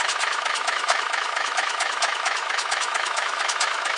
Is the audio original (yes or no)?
no